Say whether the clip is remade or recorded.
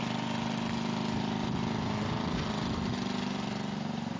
recorded